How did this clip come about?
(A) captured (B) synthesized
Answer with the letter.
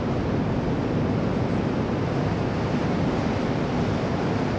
A